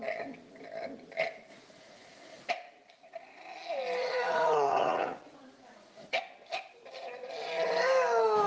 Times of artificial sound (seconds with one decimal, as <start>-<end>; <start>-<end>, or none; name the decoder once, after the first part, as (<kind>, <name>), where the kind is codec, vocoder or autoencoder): 1.5-2.5 (vocoder, Vocos); 4.0-6.2